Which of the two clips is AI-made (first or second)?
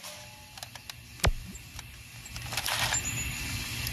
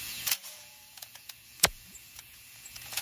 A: second